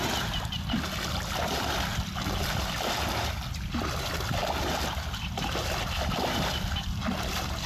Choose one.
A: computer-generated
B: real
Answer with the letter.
B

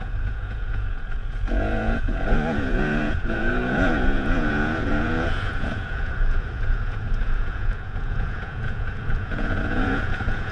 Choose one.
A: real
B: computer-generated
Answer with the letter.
B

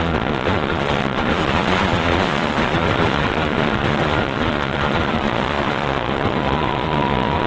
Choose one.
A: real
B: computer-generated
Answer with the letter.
B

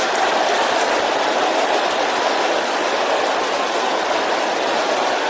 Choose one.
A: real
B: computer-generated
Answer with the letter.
A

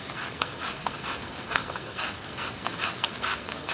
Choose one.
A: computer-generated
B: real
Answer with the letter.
A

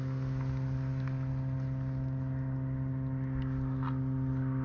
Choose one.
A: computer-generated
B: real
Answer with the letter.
B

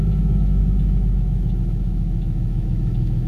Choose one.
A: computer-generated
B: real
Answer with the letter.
A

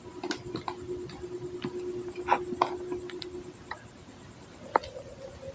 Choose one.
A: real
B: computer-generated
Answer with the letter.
A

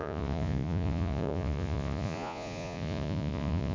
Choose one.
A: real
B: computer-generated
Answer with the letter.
B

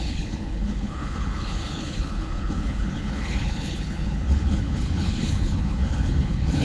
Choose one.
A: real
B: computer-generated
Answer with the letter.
B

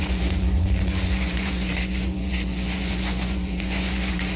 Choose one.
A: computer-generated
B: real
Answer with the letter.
A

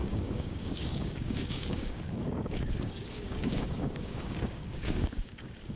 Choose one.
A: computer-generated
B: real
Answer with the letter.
A